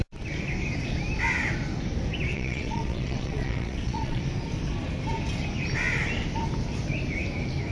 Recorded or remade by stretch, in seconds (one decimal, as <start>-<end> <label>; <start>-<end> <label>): 0.0-2.3 recorded; 2.3-4.2 remade; 4.2-7.7 recorded